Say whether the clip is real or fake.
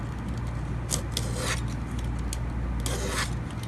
real